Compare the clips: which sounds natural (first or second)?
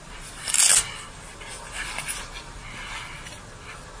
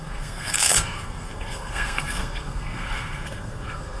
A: first